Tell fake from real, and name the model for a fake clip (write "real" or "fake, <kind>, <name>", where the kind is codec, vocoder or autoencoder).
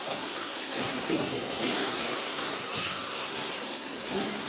fake, codec, SNAC